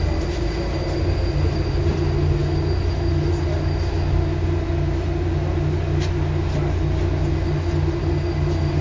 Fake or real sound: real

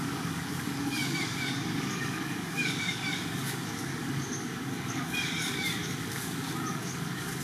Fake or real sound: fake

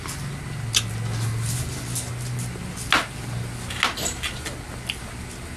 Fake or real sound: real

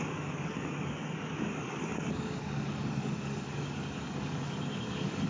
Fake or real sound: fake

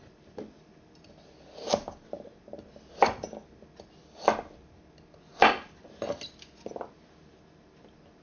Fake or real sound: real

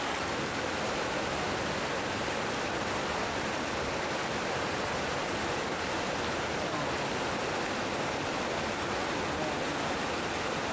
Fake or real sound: real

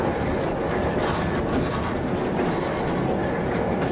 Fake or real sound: real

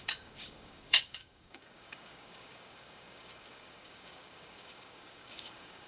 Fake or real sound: fake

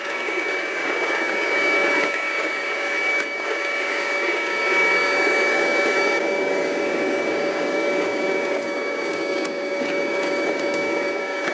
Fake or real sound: fake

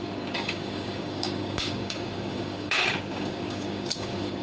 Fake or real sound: fake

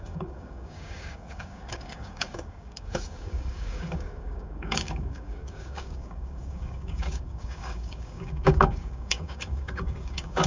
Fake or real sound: fake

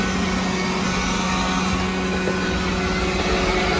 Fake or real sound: real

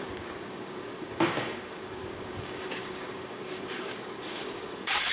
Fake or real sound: fake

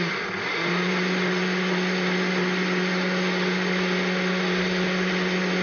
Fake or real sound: real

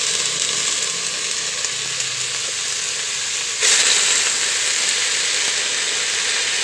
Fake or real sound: real